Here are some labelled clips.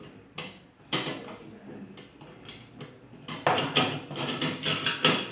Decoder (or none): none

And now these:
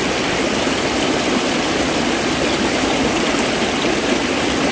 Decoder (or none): none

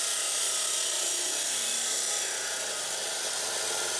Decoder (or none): none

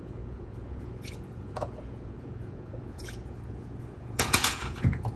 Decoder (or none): vocoder, Vocos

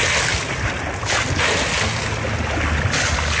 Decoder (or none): none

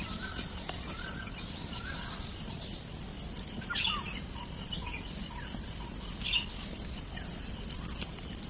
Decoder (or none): none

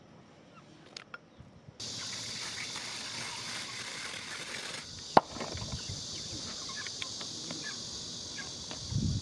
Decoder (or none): none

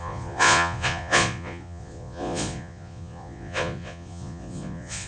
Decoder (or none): vocoder, Vocos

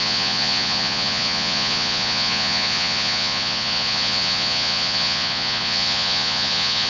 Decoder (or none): vocoder, Vocos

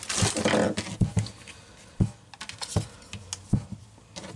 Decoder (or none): none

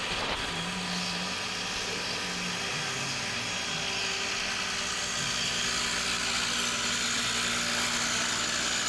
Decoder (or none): none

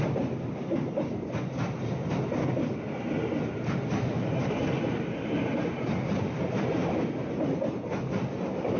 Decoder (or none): none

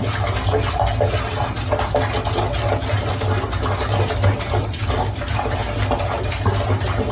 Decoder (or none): none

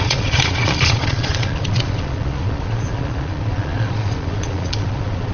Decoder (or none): vocoder, Vocos